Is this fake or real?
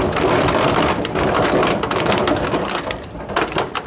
real